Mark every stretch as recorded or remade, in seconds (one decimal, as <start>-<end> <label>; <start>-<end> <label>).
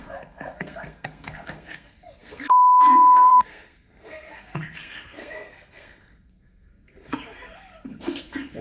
0.0-8.6 remade